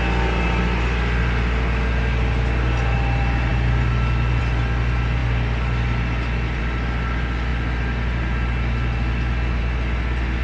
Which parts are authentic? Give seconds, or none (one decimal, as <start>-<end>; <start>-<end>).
0.0-10.4